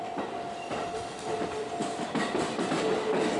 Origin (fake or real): real